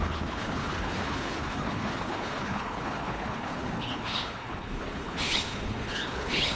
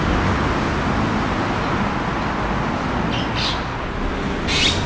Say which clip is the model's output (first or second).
first